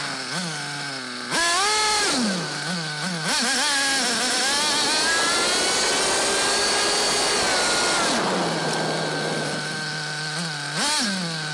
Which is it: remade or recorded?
recorded